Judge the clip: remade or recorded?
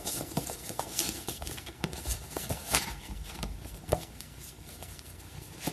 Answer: remade